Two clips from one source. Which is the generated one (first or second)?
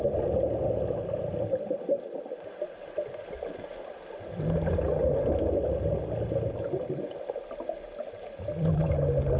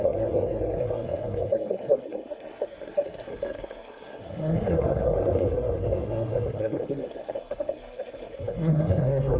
second